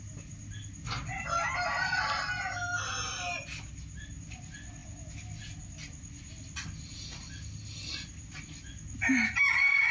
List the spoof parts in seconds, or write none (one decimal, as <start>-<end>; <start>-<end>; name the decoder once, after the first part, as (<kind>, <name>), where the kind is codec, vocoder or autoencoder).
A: none